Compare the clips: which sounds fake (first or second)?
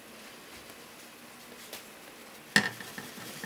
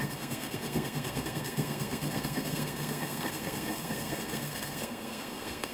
second